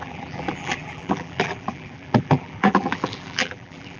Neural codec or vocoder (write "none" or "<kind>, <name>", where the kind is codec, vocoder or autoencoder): vocoder, BigVGAN v2